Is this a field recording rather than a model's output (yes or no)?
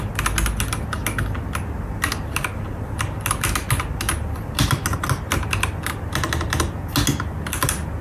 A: yes